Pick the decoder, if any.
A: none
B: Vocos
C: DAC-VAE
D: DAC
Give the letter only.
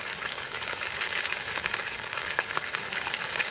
D